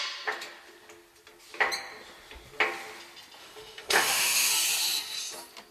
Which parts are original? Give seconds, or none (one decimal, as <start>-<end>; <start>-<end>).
0.0-3.4; 4.5-5.7